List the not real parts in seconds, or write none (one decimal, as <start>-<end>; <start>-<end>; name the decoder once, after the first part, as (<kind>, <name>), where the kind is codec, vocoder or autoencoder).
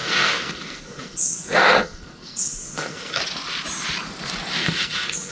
0.0-3.2 (codec, SNAC); 4.6-5.3